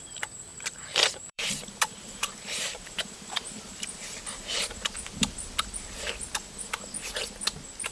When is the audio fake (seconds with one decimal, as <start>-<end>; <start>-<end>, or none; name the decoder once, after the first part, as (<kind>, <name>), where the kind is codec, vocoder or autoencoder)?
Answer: 0.5-4.1 (vocoder, BigVGAN v2)